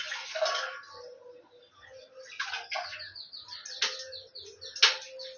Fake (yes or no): no